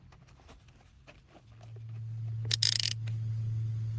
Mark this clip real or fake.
real